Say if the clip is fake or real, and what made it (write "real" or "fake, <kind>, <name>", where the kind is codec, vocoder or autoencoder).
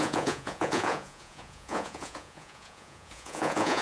fake, vocoder, Vocos